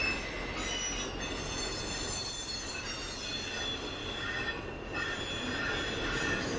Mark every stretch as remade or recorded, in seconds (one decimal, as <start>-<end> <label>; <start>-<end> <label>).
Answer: 0.0-6.6 recorded